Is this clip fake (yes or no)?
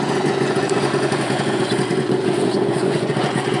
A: yes